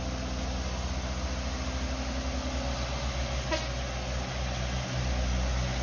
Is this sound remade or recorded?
recorded